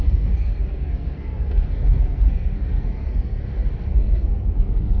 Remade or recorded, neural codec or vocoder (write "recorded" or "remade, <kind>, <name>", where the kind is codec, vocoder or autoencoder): remade, codec, SNAC